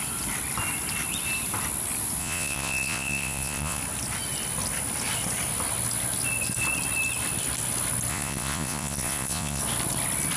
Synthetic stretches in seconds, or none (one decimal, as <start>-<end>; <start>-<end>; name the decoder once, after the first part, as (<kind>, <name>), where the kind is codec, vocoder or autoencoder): 2.2-3.8 (vocoder, Vocos); 8.1-9.6